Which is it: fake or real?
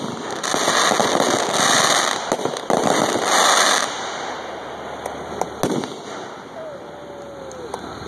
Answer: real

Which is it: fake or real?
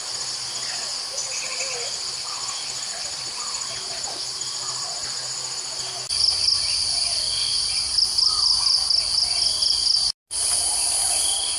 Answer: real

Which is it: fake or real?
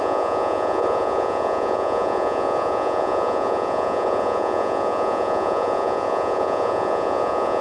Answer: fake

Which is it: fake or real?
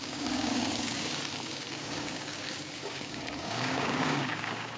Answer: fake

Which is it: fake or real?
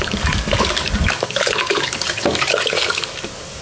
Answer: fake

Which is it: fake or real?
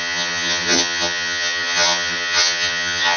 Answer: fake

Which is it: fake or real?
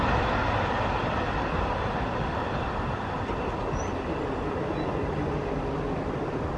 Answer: fake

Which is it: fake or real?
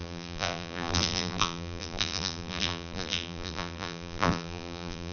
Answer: fake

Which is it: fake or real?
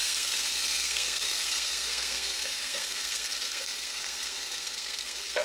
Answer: fake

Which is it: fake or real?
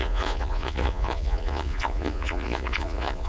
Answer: fake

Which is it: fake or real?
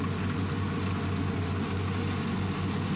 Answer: real